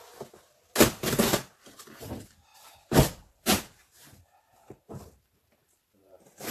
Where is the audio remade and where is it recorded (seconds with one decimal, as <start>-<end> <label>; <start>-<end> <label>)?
0.0-2.5 recorded; 2.5-6.5 remade